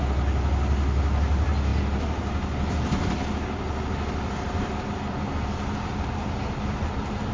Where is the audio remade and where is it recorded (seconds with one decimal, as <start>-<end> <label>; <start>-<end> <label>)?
0.0-7.3 recorded